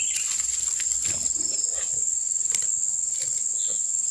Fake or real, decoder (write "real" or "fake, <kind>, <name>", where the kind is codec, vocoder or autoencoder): real